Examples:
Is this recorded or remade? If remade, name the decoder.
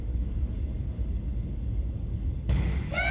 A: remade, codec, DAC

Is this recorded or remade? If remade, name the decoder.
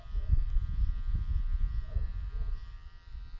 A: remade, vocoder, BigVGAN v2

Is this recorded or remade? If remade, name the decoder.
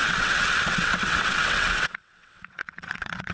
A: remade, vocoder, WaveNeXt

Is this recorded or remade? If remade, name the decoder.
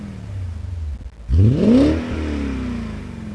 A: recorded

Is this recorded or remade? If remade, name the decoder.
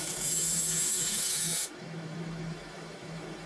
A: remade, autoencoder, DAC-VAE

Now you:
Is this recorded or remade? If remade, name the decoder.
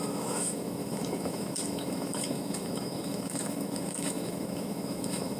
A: remade, autoencoder, DAC-VAE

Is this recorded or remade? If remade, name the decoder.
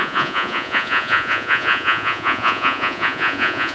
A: remade, vocoder, Vocos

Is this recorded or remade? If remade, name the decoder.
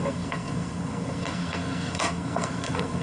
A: remade, codec, SNAC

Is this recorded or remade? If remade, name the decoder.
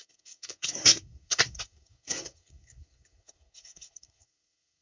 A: remade, codec, SNAC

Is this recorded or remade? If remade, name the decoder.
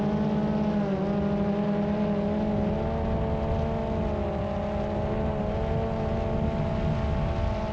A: recorded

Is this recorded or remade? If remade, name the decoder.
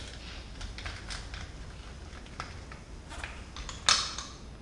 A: recorded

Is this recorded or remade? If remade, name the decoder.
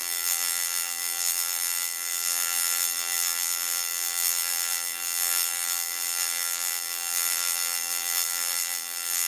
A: remade, vocoder, BigVGAN v2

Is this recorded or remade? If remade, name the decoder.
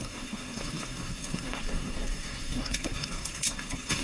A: remade, codec, SNAC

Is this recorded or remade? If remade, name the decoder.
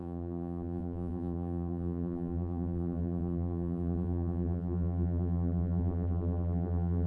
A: remade, vocoder, BigVGAN v2